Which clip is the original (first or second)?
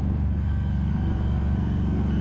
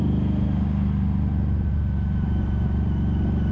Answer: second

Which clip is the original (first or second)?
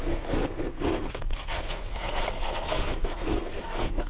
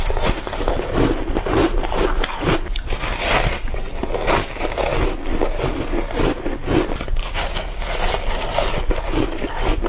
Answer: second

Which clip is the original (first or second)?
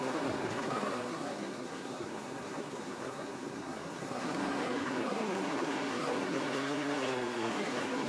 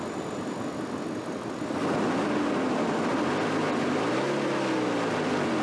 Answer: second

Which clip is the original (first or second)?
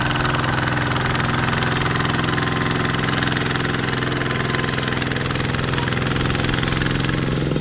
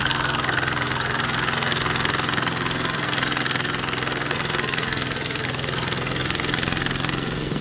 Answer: first